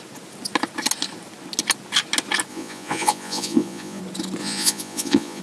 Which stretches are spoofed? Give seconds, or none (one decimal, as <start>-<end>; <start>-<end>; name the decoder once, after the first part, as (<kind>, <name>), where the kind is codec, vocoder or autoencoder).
2.5-4.0 (vocoder, Vocos); 4.4-5.4